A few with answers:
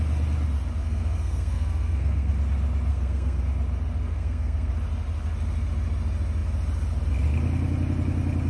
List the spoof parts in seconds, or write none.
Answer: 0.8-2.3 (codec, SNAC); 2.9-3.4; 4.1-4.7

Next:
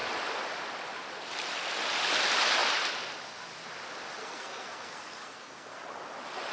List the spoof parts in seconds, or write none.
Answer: 4.2-5.8 (codec, SNAC)

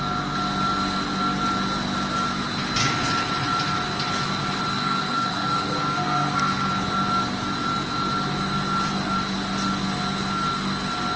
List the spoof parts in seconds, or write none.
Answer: 4.7-6.7 (codec, SNAC)

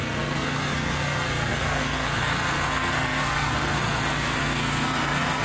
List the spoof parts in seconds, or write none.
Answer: 0.0-5.4 (codec, SNAC)

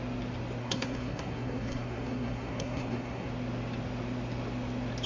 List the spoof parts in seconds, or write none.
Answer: 0.6-3.3 (codec, SNAC)

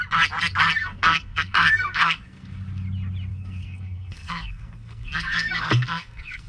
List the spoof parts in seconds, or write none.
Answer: 0.8-2.6 (codec, SNAC); 3.3-6.5

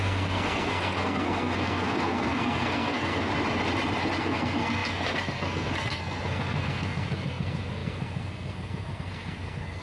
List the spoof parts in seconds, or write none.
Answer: 0.0-3.3 (codec, SNAC); 4.2-9.8

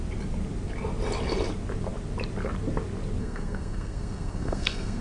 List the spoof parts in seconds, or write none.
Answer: 3.2-5.0 (codec, SNAC)